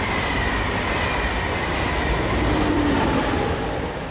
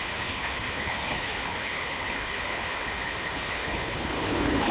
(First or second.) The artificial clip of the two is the second